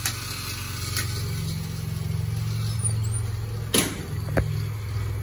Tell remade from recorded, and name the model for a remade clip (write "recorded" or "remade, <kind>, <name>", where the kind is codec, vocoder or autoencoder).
recorded